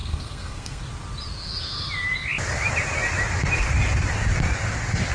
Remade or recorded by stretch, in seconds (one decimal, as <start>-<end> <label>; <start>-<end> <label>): 0.0-0.8 remade; 0.8-5.1 recorded